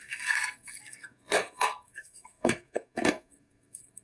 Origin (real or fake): fake